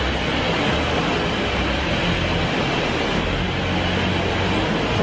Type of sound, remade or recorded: recorded